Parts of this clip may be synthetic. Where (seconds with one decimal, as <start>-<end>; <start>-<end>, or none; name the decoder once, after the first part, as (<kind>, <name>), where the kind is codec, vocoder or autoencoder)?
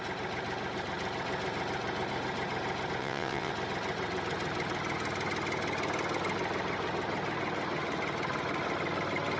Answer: 3.0-3.5 (vocoder, WaveNeXt)